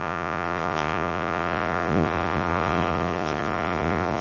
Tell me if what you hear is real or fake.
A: fake